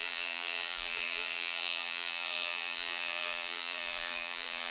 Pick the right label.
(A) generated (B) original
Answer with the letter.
A